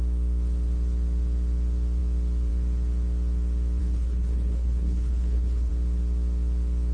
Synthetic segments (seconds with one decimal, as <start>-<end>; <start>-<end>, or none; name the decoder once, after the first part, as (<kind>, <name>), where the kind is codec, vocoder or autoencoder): 3.8-5.7 (codec, HILCodec)